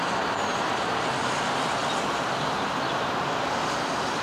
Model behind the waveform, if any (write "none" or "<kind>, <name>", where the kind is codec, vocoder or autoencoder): none